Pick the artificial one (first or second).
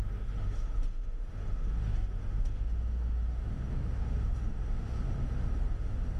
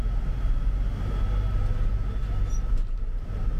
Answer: first